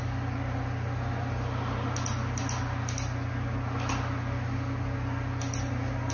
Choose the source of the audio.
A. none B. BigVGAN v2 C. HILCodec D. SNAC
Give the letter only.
A